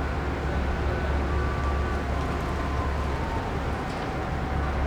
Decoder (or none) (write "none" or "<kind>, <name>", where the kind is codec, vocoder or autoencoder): none